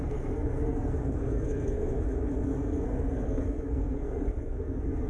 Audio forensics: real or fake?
fake